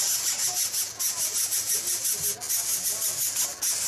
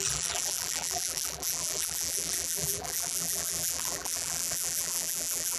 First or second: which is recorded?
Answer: first